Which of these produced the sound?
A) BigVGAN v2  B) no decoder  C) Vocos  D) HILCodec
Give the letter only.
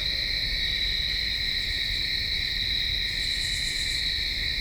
B